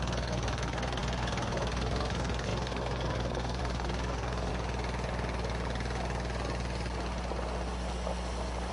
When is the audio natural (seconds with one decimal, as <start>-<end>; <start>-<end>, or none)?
4.5-8.7

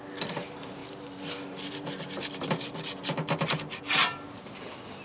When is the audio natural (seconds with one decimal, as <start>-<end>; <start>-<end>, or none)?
0.0-5.0

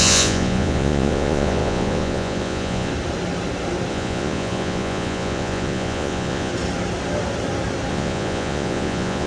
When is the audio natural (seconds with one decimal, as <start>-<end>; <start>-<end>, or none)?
2.9-3.9; 6.5-7.9

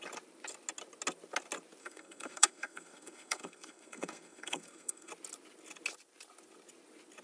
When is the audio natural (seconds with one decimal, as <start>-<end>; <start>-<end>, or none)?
0.0-1.8; 5.1-7.2

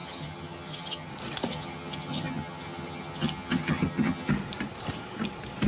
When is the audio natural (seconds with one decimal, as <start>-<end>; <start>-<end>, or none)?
1.1-1.5; 4.3-5.7

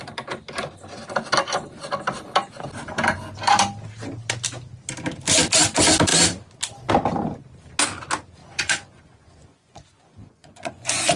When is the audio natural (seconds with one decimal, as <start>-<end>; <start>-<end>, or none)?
0.0-8.4